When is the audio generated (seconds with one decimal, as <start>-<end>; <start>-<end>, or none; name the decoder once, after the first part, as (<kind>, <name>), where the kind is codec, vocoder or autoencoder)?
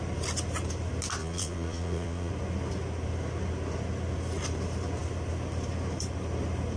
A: 1.2-2.3 (vocoder, Vocos)